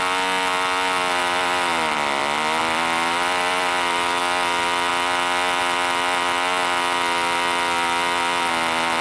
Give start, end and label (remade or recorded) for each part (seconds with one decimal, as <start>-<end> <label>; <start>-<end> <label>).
0.0-1.2 recorded; 1.2-2.2 remade; 2.2-2.6 recorded; 2.6-4.2 remade; 4.2-9.0 recorded